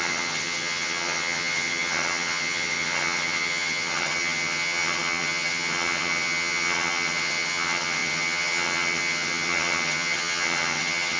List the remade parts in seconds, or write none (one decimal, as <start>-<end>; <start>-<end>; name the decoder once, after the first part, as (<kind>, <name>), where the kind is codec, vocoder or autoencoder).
0.0-11.2 (vocoder, HiFi-GAN)